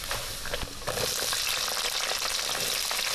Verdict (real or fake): real